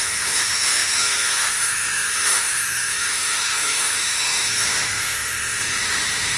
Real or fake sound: fake